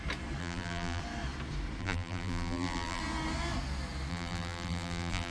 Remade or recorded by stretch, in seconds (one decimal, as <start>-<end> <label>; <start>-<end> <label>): 0.0-0.4 recorded; 0.4-1.0 remade; 1.0-1.8 recorded; 1.8-3.0 remade; 3.0-4.1 recorded; 4.1-5.3 remade